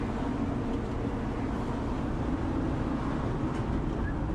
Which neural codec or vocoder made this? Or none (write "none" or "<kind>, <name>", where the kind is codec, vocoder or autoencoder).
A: none